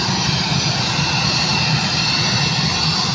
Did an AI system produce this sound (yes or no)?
no